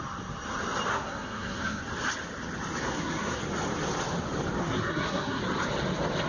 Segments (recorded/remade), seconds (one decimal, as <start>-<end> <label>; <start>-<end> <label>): 0.0-0.9 recorded; 0.9-1.8 remade; 1.8-2.8 recorded; 2.8-3.4 remade; 3.4-4.6 recorded; 4.6-5.4 remade; 5.4-6.3 recorded